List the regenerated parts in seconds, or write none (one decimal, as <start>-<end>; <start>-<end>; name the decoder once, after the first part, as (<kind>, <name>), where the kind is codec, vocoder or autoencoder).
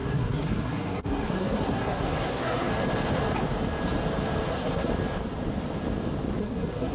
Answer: 0.0-2.7 (codec, SNAC); 4.5-4.9; 6.4-6.9